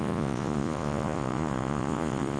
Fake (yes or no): yes